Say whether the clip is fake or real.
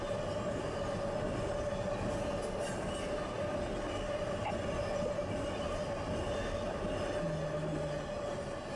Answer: real